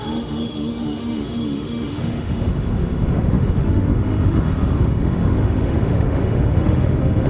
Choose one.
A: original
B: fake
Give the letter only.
B